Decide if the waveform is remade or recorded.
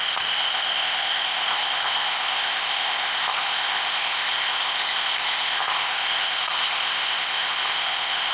remade